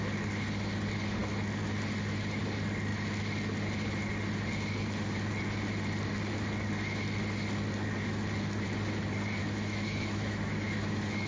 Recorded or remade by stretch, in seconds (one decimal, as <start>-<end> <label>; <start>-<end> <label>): 0.0-9.4 recorded; 9.4-11.3 remade